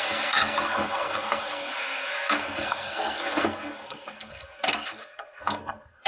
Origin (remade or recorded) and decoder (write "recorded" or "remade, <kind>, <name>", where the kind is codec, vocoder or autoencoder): remade, codec, SNAC